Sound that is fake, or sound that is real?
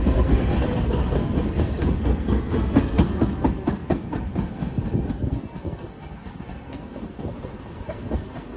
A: fake